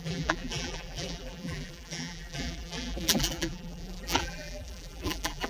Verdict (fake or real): fake